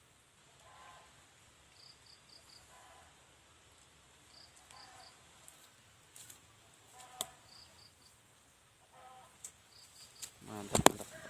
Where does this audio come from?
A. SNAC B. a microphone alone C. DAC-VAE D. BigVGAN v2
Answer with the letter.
B